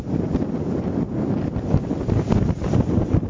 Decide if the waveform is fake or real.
real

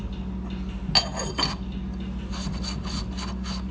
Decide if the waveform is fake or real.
real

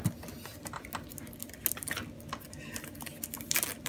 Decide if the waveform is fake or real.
real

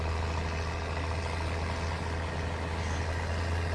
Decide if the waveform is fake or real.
real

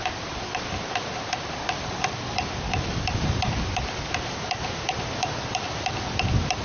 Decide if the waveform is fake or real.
fake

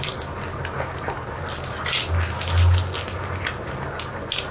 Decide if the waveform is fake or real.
real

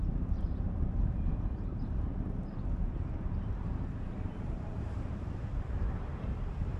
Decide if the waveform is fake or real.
fake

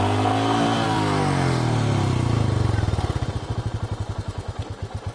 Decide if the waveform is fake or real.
real